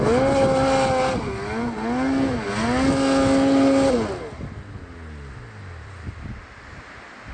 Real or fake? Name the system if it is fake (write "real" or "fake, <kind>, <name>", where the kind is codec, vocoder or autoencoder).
real